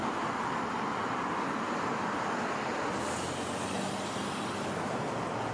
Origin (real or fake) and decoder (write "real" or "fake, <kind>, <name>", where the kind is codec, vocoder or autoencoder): real